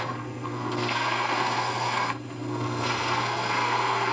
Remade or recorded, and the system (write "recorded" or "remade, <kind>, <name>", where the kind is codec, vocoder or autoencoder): remade, codec, SNAC